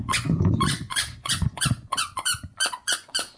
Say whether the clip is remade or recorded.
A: remade